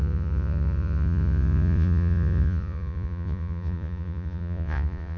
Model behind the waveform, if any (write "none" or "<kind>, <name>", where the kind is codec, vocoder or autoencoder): vocoder, Vocos